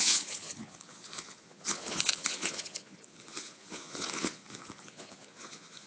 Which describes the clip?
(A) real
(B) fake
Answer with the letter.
B